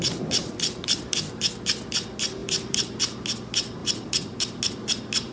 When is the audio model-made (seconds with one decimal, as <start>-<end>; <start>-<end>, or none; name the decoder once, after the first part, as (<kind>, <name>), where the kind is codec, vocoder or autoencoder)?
0.4-1.5 (vocoder, BigVGAN v2); 2.4-3.0; 3.8-4.6